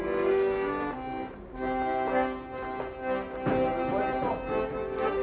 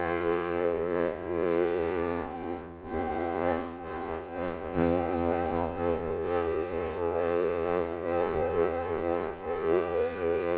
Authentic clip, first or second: first